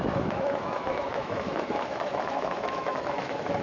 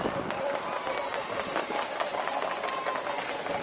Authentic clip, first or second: second